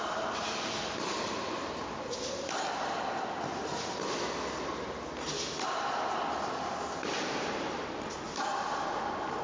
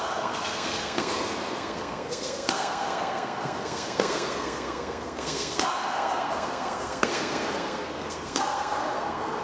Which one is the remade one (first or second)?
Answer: second